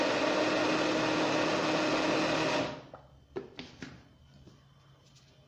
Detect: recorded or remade recorded